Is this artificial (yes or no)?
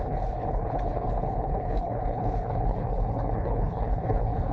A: yes